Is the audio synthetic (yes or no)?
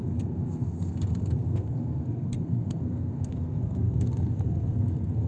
yes